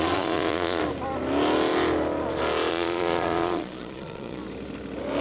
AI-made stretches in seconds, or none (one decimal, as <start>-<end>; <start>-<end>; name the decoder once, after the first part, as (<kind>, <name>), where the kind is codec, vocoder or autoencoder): 0.0-0.8 (vocoder, Vocos); 2.7-4.4